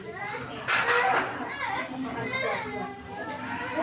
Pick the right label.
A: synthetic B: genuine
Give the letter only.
B